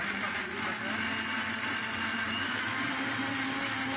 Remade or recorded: recorded